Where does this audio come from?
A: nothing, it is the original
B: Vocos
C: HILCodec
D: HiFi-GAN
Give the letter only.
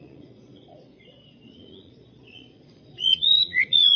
B